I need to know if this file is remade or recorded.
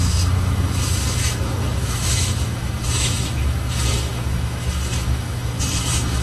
remade